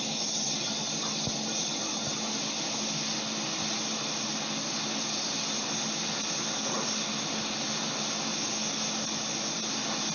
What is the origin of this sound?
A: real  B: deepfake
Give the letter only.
A